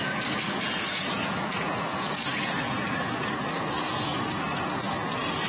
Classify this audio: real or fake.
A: fake